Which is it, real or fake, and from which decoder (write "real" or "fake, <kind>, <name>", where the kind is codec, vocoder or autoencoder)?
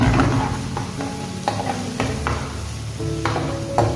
real